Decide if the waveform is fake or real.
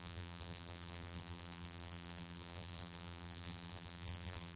fake